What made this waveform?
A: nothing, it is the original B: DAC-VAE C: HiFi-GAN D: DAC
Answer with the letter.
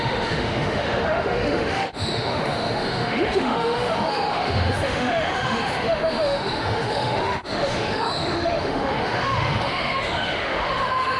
B